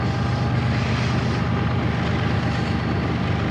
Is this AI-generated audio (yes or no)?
no